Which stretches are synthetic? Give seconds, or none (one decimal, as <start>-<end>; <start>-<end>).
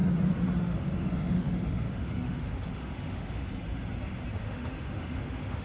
0.6-3.4; 4.4-5.6